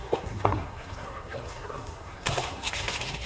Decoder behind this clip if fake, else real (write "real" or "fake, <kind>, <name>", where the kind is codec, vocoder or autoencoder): fake, codec, SNAC